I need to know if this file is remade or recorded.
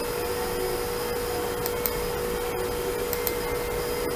recorded